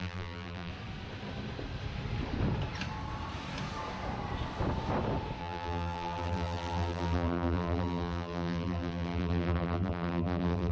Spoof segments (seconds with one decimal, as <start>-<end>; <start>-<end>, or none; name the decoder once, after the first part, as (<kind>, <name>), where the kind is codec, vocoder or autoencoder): 0.0-0.7 (vocoder, BigVGAN v2); 5.4-10.7